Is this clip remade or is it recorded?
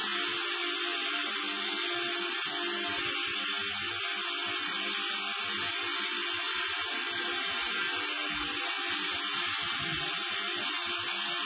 recorded